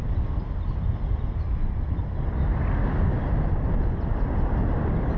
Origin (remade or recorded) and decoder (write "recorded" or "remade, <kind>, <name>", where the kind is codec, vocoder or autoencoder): recorded